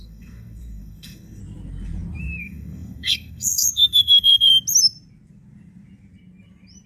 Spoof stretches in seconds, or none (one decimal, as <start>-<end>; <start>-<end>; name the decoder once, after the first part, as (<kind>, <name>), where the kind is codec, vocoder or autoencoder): 0.0-1.4 (codec, SNAC); 2.4-4.5